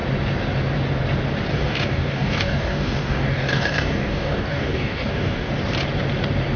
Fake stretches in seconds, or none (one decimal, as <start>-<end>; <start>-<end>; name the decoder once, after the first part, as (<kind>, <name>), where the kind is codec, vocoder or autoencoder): 1.5-5.5 (codec, DAC)